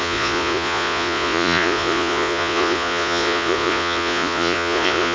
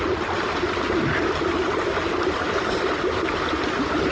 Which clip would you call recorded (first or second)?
second